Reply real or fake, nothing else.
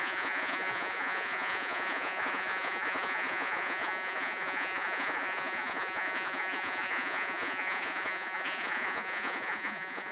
fake